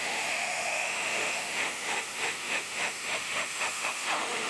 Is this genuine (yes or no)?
no